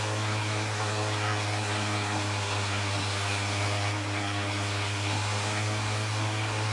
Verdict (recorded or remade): remade